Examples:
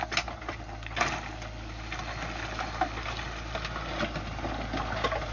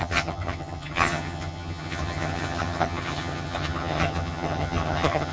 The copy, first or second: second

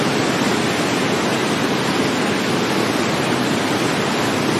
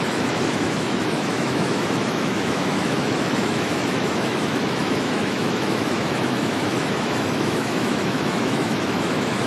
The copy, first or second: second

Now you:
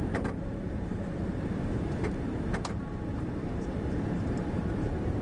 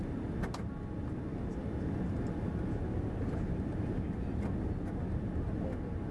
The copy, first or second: first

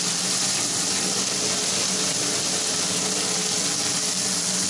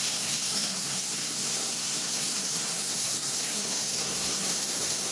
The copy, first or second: second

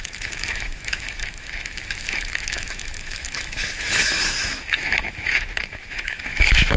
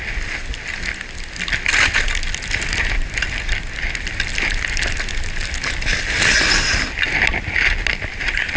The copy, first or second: first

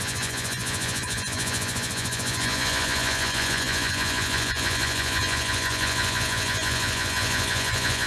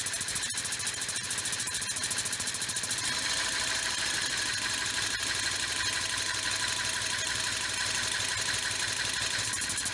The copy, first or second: first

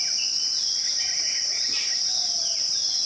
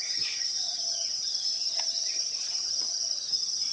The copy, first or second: second